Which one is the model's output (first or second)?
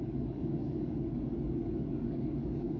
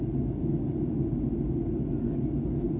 first